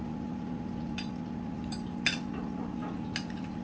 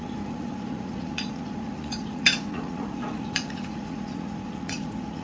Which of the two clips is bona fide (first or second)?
first